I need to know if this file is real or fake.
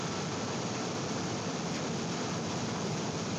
fake